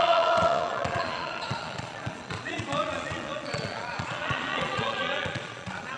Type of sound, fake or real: fake